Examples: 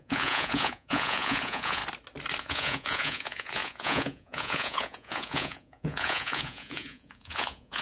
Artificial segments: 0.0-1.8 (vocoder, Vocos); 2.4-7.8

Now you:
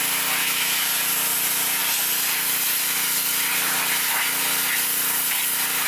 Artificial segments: 0.4-0.9 (autoencoder, DAC-VAE)